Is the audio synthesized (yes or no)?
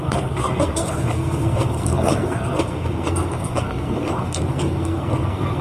yes